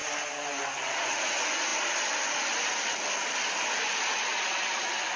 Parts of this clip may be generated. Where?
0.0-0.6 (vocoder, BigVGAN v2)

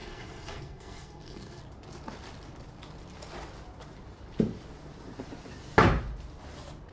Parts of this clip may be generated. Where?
0.0-1.6 (codec, SNAC)

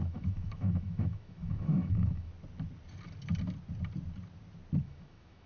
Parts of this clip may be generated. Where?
0.0-2.3 (autoencoder, DAC-VAE); 4.8-5.5